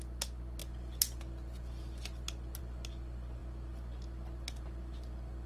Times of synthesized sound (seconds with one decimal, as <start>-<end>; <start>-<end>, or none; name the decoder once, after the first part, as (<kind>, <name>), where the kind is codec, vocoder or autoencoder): none

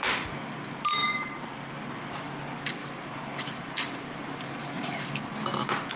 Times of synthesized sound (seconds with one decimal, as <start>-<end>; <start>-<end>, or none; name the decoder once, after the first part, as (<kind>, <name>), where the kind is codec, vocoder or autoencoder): 1.0-1.7 (vocoder, BigVGAN v2); 2.8-5.1

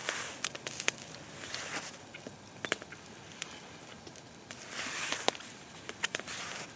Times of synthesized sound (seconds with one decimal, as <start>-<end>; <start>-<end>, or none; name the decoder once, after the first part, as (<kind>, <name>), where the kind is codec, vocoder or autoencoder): none

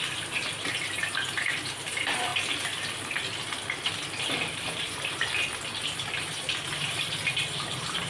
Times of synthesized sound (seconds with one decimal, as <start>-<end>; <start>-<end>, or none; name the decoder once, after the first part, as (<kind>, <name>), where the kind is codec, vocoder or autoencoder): 0.0-2.3 (vocoder, BigVGAN v2); 4.5-5.4; 6.2-8.1